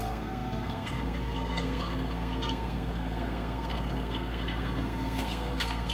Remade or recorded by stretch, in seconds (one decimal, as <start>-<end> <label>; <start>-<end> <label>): 0.0-5.9 remade